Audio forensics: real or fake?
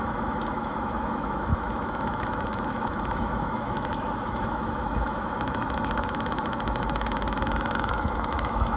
fake